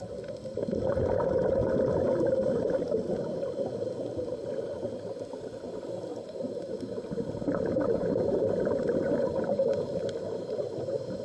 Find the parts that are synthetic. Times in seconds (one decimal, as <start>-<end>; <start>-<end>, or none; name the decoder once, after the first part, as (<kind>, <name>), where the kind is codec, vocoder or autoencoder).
6.1-6.8 (vocoder, BigVGAN v2)